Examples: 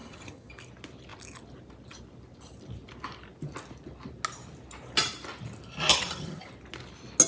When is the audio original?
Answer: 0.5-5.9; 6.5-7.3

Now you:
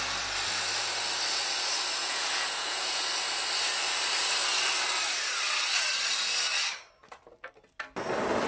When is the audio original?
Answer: 0.0-2.0; 3.1-8.5

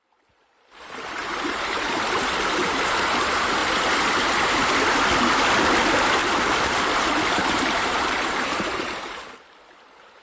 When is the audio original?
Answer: 0.0-1.2; 1.8-6.2; 9.3-10.2

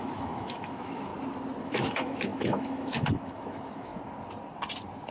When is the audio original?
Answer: 1.1-1.6; 3.9-5.1